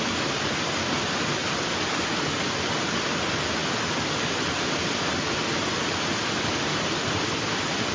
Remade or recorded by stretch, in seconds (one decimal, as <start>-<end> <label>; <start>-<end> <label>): 0.0-7.9 recorded